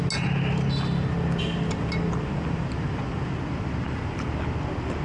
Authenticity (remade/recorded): recorded